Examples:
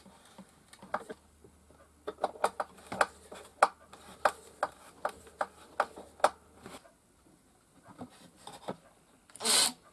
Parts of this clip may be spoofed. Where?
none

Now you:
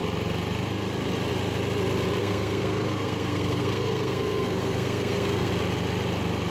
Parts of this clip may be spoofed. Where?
2.2-5.5 (codec, SNAC)

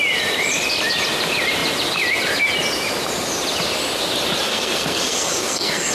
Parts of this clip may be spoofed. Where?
4.5-5.9 (codec, SNAC)